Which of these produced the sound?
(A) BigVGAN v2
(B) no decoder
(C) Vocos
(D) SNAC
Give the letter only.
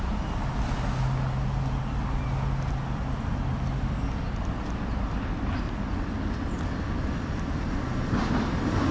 B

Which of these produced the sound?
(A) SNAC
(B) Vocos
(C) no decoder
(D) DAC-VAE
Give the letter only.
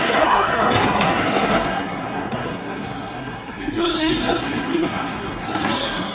A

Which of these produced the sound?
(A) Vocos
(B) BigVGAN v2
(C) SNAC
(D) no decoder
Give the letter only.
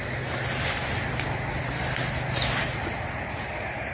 D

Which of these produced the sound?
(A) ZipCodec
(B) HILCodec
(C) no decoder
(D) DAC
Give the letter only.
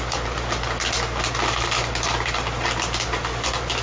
C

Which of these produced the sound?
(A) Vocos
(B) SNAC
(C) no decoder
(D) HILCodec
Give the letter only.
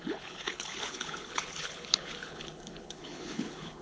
D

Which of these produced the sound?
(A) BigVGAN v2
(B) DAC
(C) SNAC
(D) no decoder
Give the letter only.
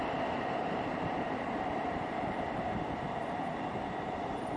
A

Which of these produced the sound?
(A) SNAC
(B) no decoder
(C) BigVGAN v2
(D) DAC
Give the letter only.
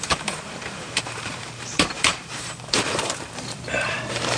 C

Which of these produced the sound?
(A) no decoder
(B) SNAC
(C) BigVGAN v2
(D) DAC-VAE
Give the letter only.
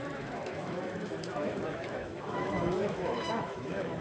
D